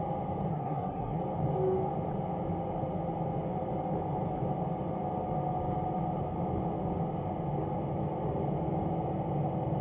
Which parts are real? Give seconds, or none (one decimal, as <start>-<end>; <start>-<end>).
0.0-0.5; 1.2-9.8

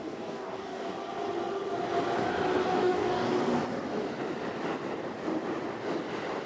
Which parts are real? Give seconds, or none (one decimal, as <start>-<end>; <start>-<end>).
0.9-2.6; 3.3-6.5